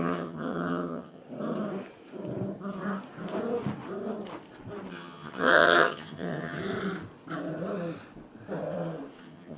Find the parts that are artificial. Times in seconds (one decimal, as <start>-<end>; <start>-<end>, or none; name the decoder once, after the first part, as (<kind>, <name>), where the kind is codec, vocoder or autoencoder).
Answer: 0.0-1.2 (vocoder, HiFi-GAN); 4.9-6.6; 9.2-9.6